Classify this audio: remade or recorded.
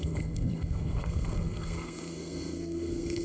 remade